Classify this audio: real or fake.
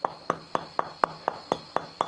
real